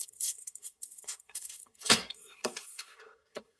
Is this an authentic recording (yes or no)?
no